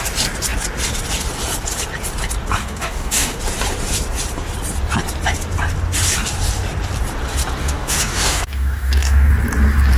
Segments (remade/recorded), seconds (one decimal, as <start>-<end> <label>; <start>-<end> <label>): 0.0-2.6 recorded; 2.6-3.4 remade; 3.4-7.6 recorded; 7.6-9.3 remade; 9.3-10.0 recorded